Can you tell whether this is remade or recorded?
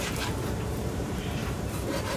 remade